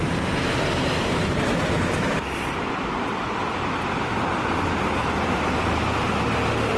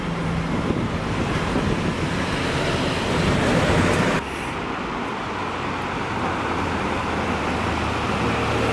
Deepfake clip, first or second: first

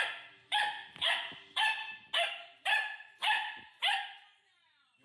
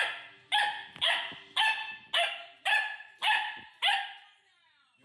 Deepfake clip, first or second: first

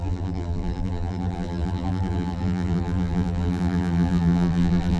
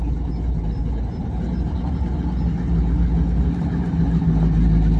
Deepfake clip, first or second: first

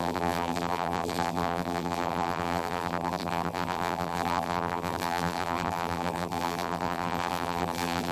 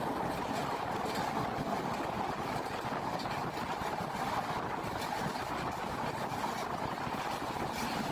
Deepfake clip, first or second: first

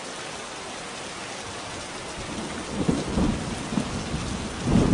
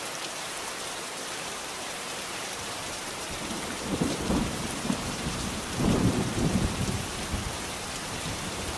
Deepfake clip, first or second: second